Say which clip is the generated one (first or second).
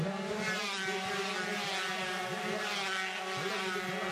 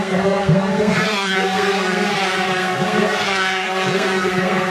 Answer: second